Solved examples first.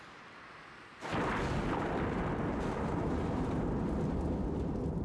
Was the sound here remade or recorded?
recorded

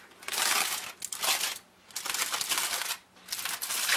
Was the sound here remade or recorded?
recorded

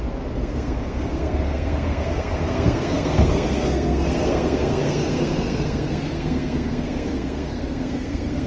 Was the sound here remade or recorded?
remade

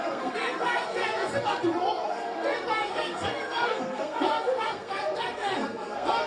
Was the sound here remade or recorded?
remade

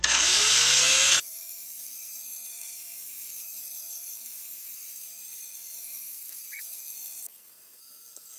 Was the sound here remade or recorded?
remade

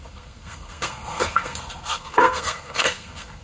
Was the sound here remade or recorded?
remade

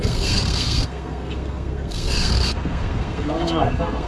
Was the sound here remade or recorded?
remade